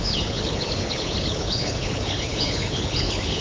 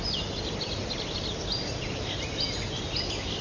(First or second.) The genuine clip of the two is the second